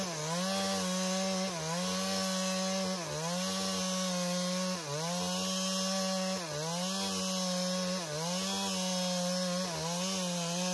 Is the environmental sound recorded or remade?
recorded